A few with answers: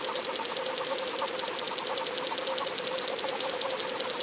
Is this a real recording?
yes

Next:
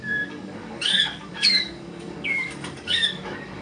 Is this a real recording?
no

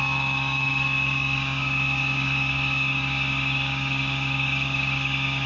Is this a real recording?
no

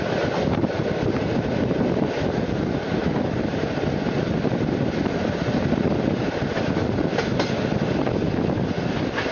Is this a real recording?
yes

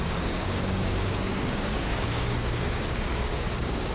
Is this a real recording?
no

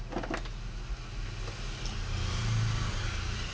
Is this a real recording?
yes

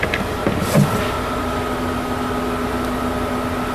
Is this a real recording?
yes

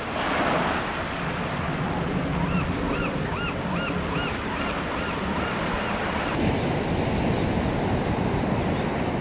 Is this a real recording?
yes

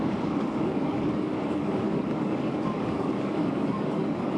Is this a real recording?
no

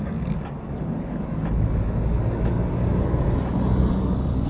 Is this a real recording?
no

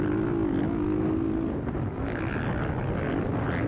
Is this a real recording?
yes